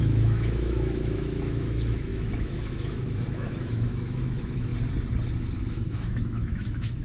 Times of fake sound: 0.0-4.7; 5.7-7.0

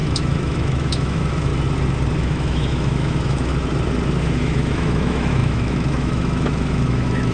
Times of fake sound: 0.0-1.5; 2.2-3.5; 4.2-7.3